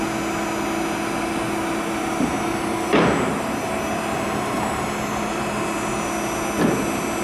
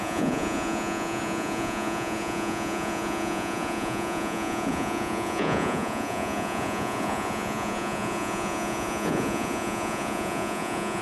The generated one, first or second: second